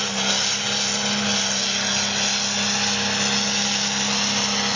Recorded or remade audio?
recorded